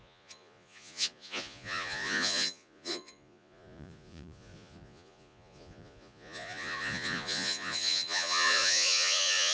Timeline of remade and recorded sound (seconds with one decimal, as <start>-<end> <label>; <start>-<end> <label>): 0.0-9.5 remade